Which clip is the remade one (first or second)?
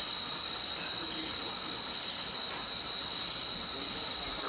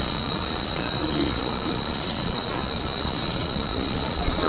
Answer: second